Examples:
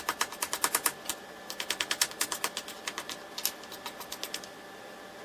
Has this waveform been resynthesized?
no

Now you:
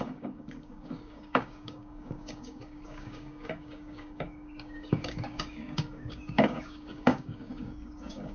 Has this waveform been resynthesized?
yes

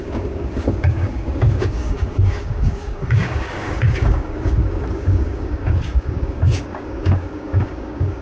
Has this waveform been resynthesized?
yes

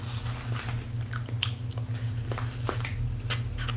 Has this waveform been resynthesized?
no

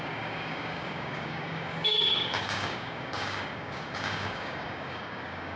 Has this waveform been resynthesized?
yes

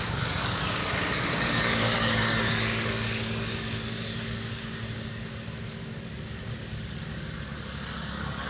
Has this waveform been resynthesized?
yes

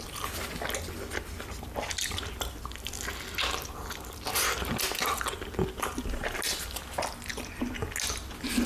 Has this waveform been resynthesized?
no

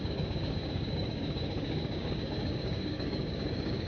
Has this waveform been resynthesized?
yes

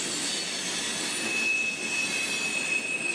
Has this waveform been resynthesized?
no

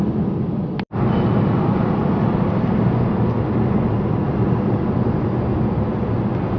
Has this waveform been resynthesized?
no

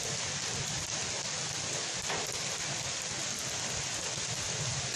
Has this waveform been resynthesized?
no